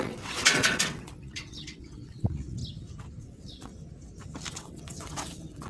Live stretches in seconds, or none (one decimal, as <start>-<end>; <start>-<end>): 2.6-3.2; 3.7-4.5